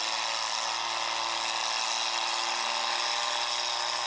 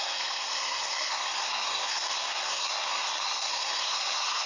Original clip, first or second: first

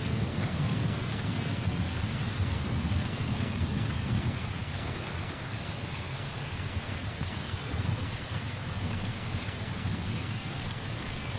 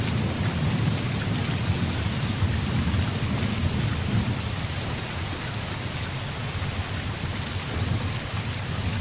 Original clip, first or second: second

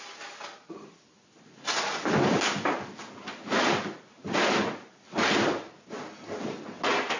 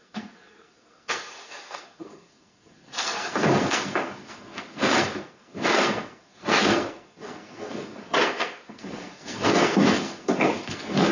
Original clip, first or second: first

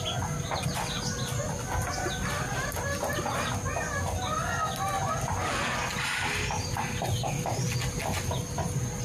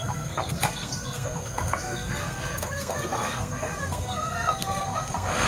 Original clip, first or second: first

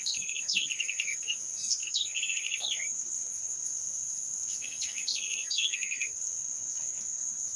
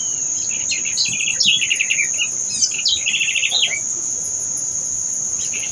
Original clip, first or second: second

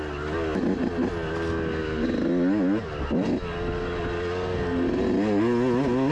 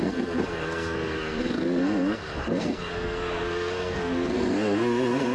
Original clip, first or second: first